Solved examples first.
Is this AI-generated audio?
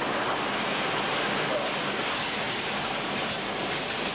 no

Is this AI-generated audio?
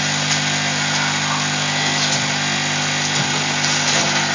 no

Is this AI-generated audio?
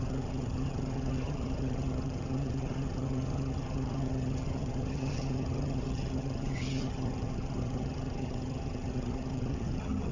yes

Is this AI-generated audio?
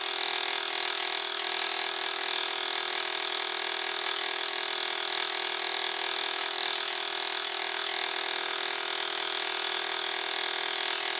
no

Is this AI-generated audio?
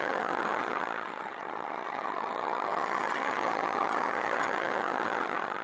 yes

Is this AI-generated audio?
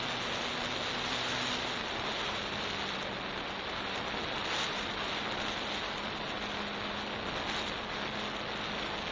no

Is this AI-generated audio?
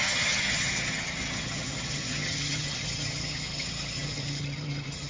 yes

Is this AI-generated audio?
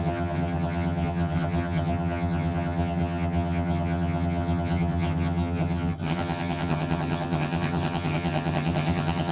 yes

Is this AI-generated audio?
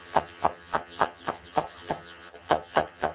yes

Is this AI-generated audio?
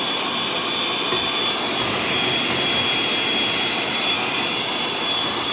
no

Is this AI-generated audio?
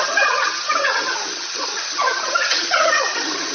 yes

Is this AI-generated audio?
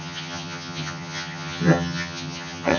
yes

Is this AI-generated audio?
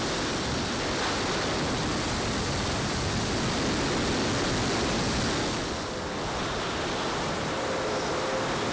no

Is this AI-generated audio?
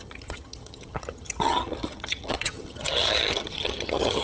yes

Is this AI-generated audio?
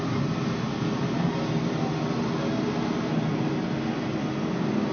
no